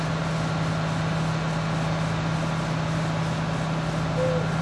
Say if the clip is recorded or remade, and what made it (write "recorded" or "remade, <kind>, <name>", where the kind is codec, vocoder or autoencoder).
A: recorded